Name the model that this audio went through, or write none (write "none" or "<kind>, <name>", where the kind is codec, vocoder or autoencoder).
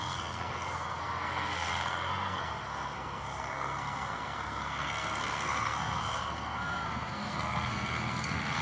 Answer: codec, SNAC